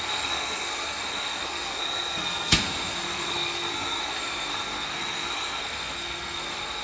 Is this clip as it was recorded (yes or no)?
no